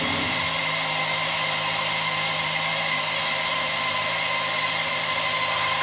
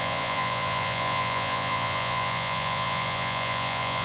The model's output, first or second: second